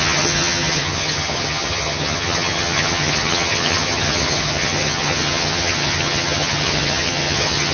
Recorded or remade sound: remade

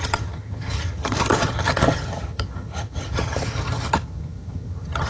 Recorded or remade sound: remade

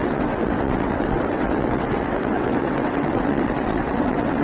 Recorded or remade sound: remade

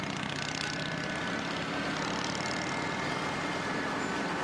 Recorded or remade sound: recorded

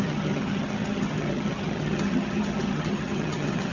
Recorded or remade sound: remade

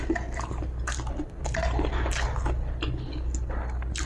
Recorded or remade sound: recorded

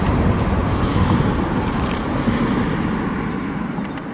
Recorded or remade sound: recorded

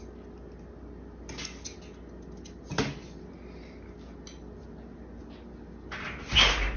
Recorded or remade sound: recorded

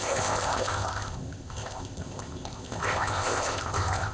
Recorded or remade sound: remade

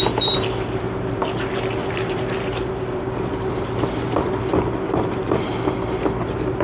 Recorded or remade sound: remade